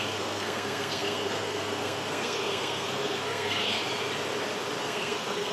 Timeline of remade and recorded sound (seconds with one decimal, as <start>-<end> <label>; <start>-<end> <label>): 0.0-3.8 remade; 3.8-4.8 recorded; 4.8-5.5 remade